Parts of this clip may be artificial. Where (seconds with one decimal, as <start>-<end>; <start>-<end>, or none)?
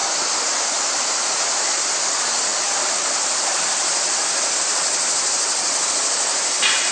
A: 0.0-2.5; 3.0-6.9